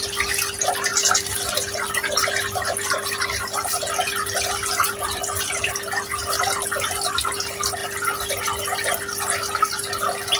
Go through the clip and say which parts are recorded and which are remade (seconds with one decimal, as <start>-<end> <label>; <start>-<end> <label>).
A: 0.0-0.9 recorded; 0.9-5.7 remade; 5.7-10.4 recorded